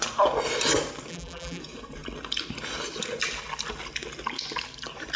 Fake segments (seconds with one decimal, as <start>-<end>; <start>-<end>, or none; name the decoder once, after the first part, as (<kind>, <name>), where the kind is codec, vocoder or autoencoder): 1.1-1.6 (vocoder, BigVGAN v2)